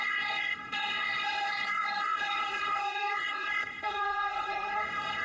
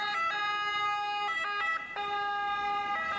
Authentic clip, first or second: second